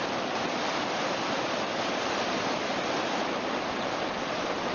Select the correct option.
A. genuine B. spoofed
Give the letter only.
B